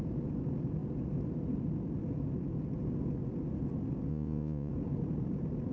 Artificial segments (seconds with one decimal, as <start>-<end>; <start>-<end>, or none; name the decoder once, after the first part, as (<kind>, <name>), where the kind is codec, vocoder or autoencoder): 4.1-4.7 (vocoder, Vocos)